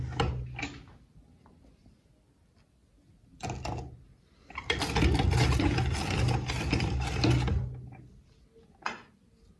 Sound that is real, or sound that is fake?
real